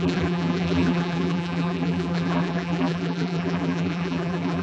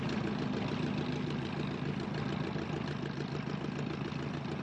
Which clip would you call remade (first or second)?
first